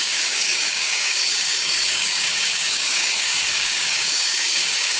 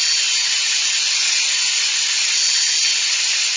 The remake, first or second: first